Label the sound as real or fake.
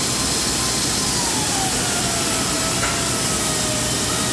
real